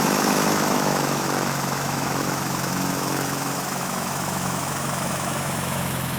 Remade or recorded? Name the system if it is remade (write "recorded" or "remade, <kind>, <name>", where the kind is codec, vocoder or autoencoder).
remade, autoencoder, DAC-VAE